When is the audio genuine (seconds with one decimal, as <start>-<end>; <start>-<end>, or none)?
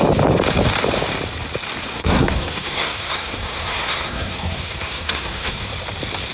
0.0-1.9; 5.7-6.3